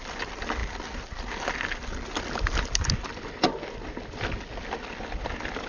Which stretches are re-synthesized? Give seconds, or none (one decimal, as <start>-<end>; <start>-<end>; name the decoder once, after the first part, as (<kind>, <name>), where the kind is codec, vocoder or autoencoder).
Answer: none